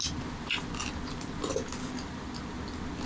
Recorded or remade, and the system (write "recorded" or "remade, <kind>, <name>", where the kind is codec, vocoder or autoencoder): recorded